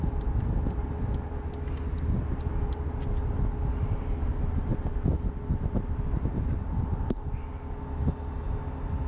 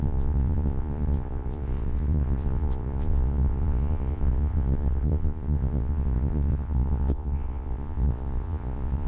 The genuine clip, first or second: first